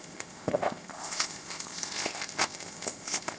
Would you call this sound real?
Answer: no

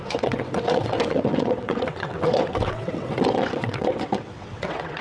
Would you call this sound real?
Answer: no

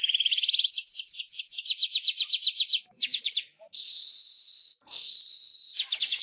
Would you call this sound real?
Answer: no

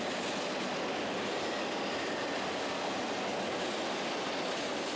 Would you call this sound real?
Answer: yes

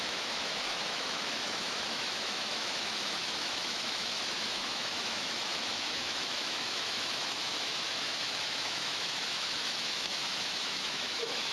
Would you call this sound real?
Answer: no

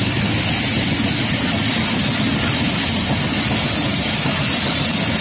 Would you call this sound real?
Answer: yes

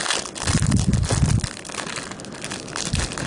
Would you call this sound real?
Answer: yes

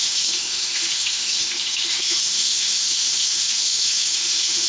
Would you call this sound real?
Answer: no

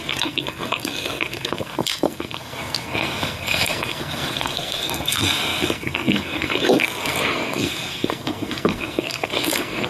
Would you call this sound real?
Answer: no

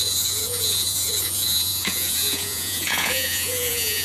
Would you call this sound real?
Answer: no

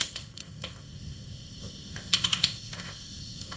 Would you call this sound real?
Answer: no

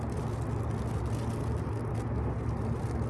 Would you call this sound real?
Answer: yes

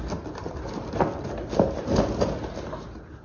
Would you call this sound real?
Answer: yes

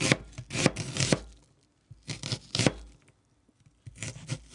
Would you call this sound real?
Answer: yes